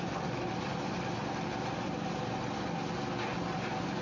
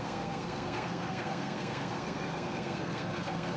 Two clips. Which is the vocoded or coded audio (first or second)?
second